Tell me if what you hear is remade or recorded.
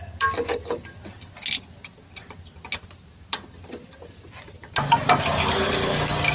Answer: recorded